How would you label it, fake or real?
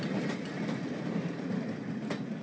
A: real